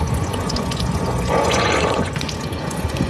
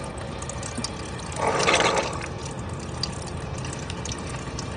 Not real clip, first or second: first